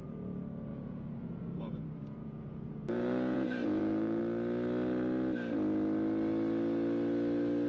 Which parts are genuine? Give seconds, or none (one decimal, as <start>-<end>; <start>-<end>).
0.0-0.7; 4.2-7.7